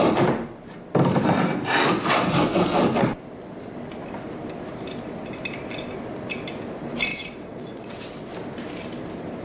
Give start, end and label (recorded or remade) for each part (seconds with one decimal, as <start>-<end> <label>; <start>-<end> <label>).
0.0-7.1 recorded; 7.1-8.3 remade; 8.3-9.4 recorded